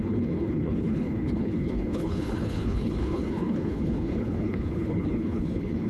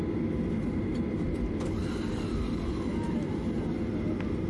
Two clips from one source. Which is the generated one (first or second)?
first